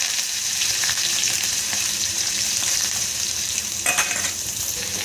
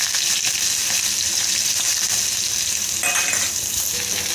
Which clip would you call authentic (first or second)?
second